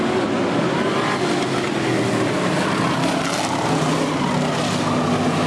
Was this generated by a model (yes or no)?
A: no